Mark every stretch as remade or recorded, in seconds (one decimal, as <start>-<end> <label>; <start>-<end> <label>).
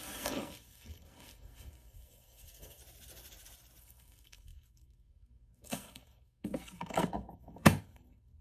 0.0-2.8 remade; 2.8-3.8 recorded; 3.8-8.4 remade